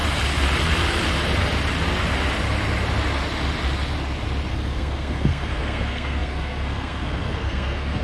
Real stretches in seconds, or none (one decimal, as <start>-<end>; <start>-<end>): 0.0-4.5